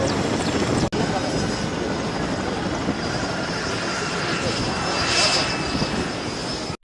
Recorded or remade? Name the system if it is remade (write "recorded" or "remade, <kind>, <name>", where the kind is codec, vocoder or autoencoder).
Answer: recorded